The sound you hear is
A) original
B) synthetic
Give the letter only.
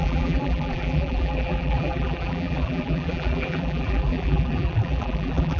B